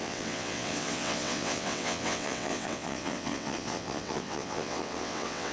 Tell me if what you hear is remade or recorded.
remade